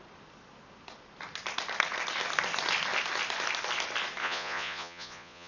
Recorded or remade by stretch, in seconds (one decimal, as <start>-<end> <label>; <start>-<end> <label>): 0.0-4.2 recorded; 4.2-5.5 remade